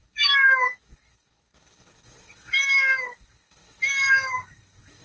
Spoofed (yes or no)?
yes